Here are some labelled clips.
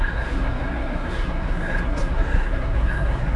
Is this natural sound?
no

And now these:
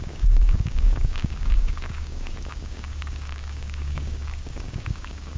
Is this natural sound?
no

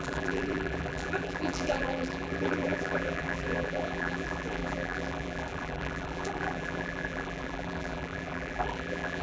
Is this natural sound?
no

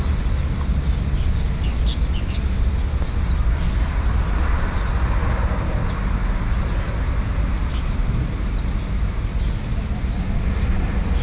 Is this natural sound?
yes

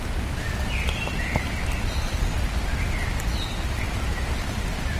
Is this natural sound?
yes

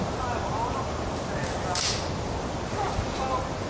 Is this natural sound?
yes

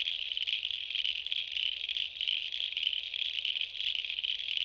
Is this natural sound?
yes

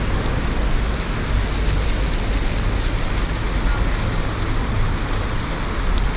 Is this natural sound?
yes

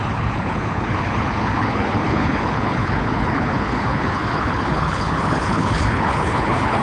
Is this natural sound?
no